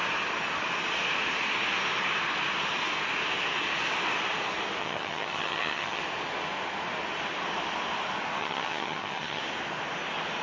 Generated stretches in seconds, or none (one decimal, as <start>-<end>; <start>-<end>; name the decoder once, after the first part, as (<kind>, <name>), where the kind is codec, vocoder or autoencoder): 4.8-6.0 (vocoder, HiFi-GAN); 8.4-9.4